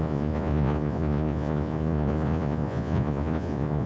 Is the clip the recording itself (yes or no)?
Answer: no